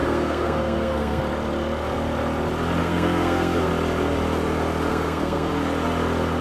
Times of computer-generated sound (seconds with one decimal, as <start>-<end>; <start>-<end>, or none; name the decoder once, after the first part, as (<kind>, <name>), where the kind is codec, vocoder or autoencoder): 0.0-1.2 (codec, SNAC); 2.8-3.7; 4.9-5.5